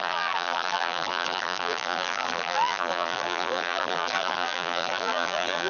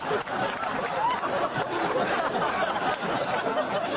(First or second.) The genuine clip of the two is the second